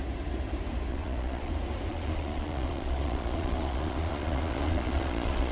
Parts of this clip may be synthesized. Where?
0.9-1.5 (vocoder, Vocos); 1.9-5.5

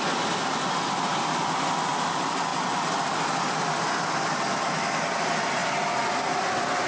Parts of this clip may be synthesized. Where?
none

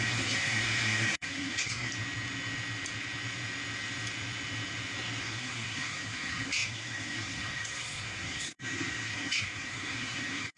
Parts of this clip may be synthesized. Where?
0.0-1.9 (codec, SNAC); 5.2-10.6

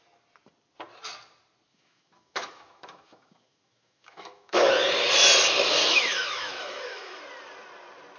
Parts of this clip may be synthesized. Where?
1.7-4.7 (autoencoder, DAC-VAE); 5.8-7.2

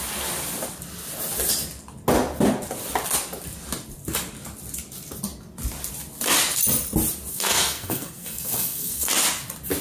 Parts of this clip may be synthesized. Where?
7.3-9.1 (codec, SNAC)

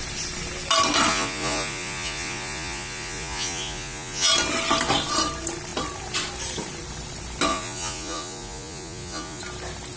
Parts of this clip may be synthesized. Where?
1.1-4.3 (vocoder, Vocos); 7.5-9.4